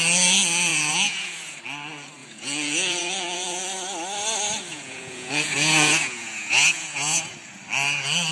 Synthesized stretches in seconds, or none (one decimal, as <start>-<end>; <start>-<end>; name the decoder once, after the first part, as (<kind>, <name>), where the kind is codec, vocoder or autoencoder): 0.7-1.6 (vocoder, Vocos); 2.2-3.7; 4.7-7.3